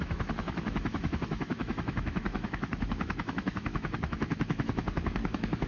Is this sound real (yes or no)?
no